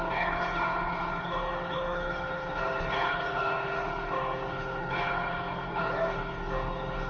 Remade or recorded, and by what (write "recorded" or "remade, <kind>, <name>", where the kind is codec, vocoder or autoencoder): remade, codec, HILCodec